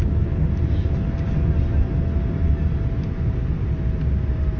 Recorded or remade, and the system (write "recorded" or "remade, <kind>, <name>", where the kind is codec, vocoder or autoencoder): recorded